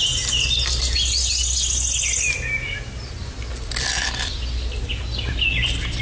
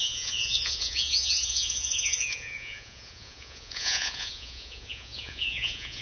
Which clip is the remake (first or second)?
second